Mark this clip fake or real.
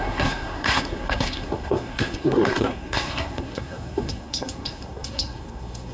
fake